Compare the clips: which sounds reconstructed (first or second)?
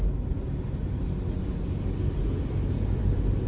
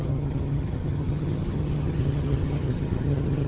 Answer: second